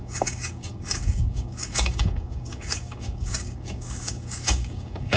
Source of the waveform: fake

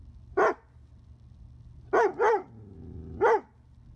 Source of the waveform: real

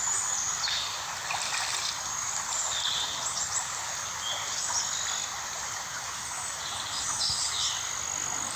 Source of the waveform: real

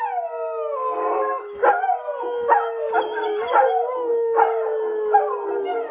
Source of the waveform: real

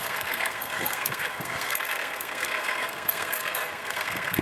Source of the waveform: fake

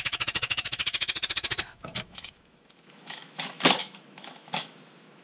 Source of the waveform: fake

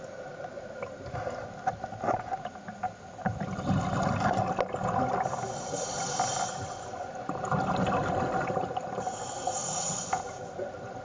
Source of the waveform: real